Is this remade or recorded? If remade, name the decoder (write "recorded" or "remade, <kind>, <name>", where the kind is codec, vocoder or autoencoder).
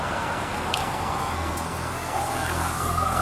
remade, codec, SNAC